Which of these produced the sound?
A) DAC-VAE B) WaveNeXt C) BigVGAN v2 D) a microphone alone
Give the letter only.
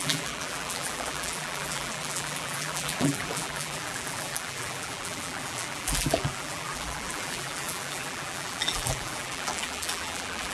C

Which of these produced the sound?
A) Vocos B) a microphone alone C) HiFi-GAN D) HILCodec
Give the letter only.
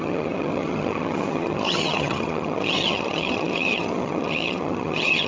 C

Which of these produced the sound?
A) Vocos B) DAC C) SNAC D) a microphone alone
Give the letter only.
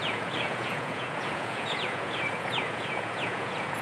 A